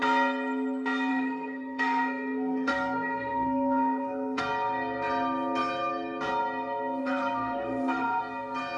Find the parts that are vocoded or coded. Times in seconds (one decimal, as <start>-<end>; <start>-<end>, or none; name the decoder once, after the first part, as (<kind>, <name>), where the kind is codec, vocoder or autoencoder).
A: 1.1-4.4 (codec, SNAC); 7.0-8.2